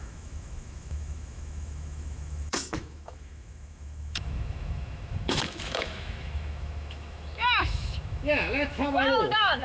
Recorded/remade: remade